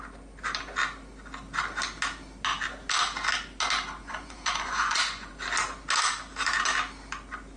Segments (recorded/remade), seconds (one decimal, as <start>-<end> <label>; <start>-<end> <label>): 0.0-4.0 recorded; 4.0-5.3 remade; 5.3-7.6 recorded